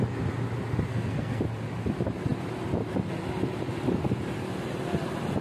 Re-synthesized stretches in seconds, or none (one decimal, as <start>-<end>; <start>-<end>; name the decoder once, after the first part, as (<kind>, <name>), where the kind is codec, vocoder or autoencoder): 0.9-1.4 (codec, SNAC)